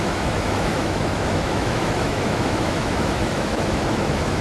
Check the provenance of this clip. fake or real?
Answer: fake